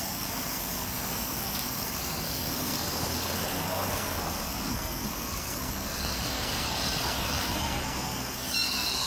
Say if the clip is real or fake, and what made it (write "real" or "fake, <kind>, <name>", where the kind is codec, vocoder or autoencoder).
fake, codec, SNAC